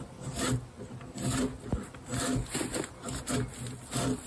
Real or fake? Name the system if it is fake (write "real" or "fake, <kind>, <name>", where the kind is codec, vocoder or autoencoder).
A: real